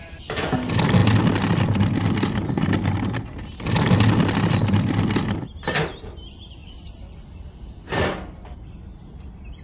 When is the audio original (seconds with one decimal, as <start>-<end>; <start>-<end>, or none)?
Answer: 0.0-9.6

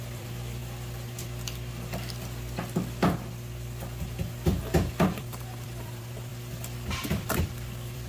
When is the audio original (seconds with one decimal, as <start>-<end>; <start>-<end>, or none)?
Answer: 0.6-5.1; 6.3-7.0

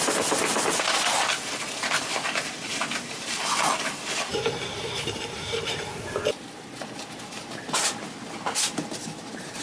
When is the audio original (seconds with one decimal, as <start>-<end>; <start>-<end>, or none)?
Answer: 0.0-4.3; 6.7-9.6